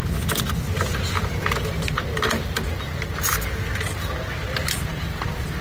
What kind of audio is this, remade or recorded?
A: recorded